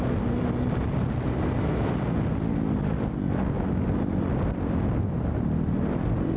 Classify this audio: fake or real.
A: real